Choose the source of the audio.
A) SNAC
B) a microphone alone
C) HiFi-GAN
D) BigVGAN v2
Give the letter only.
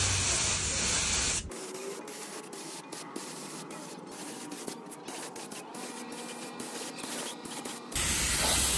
B